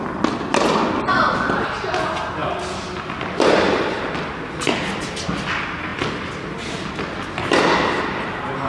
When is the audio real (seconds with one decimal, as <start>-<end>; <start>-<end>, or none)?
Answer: 0.0-8.7